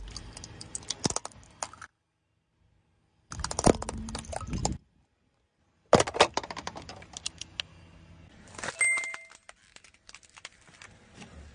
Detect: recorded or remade recorded